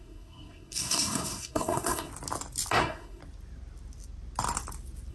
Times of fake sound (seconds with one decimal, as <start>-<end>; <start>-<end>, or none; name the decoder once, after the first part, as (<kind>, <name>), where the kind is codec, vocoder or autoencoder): 0.0-2.1 (codec, SNAC); 2.8-3.2